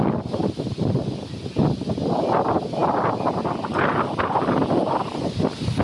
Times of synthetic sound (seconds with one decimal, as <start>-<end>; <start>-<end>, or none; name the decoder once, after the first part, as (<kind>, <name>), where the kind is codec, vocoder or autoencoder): none